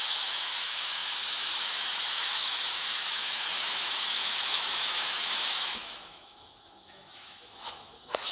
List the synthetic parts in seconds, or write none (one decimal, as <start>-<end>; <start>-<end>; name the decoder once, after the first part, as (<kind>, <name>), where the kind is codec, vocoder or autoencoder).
0.0-8.3 (autoencoder, DAC-VAE)